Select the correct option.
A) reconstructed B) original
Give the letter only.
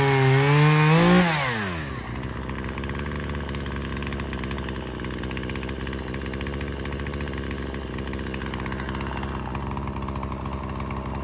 B